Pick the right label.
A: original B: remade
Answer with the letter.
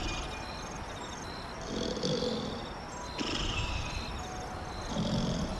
A